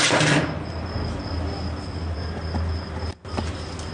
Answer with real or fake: real